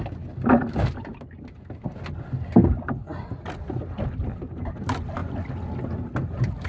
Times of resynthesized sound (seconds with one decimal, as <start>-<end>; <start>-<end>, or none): none